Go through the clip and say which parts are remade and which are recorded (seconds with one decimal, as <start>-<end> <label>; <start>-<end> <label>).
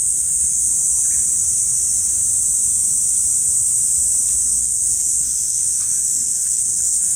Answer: 0.0-0.7 remade; 0.7-4.6 recorded; 4.6-7.2 remade